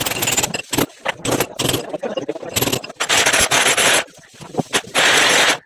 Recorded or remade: recorded